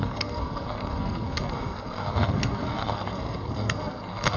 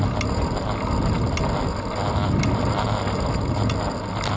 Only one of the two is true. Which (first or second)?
second